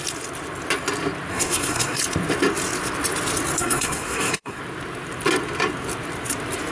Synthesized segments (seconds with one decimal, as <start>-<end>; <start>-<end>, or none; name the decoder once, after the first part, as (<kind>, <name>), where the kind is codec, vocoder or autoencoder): 1.3-2.0 (codec, SNAC); 3.6-4.6